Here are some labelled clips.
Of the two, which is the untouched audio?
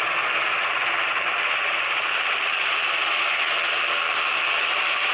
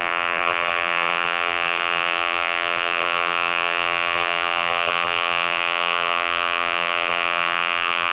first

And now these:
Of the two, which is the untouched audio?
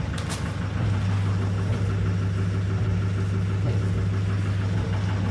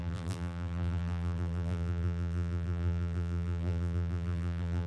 first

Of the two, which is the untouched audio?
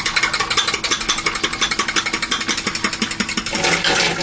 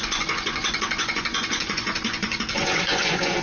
first